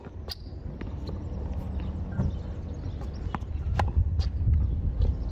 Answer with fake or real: real